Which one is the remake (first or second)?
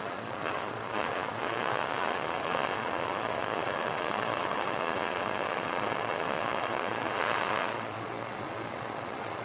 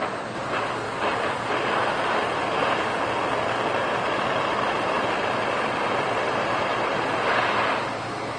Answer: first